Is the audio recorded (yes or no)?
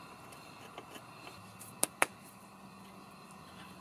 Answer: yes